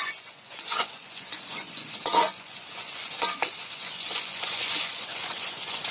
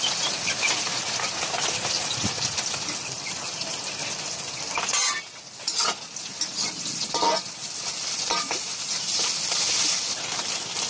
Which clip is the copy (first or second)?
first